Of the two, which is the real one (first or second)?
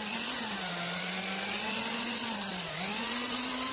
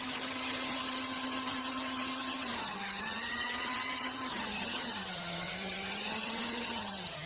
first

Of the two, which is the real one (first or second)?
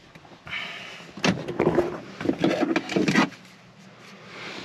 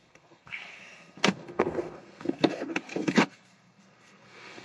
first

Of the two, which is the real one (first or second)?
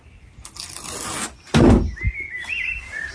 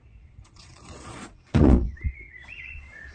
first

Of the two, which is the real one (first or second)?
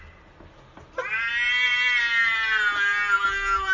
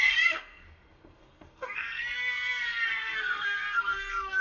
first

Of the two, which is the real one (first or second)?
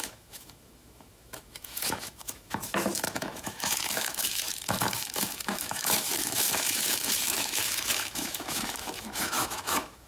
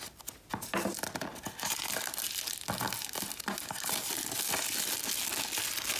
second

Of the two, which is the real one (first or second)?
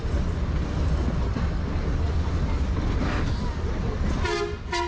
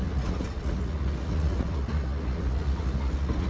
first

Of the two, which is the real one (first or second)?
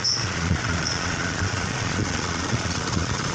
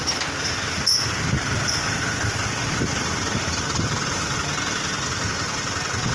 second